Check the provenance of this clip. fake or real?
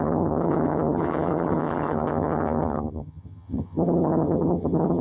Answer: fake